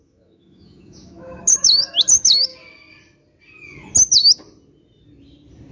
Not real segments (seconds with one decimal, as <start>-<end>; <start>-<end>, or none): 0.0-2.5